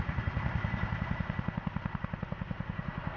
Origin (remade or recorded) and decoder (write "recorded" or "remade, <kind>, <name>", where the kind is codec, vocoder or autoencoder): recorded